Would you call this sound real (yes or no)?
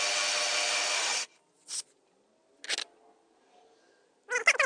yes